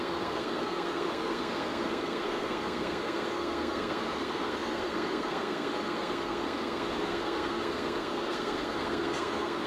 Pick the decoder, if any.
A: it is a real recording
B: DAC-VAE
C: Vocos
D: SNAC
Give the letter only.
D